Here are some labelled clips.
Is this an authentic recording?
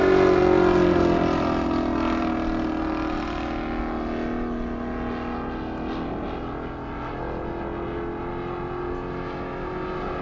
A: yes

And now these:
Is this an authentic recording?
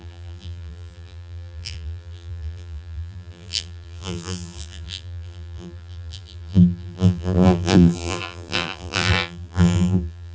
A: no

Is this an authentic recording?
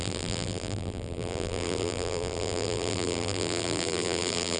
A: no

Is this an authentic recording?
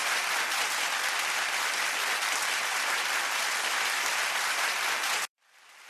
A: no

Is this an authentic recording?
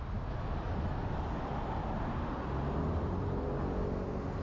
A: yes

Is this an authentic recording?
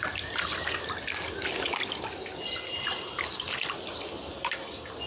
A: yes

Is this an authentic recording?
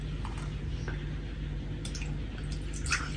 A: yes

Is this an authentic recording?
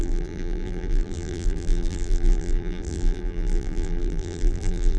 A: no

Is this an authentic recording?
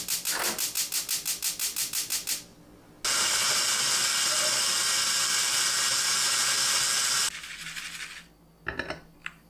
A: yes